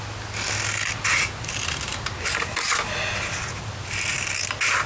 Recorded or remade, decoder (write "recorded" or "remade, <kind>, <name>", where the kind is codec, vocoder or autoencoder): recorded